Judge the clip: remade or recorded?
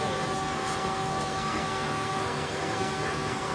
remade